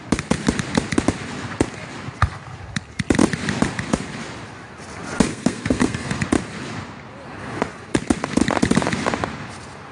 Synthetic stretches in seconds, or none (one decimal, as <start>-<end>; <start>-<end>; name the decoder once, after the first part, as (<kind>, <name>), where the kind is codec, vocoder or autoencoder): 5.3-6.2 (codec, SNAC)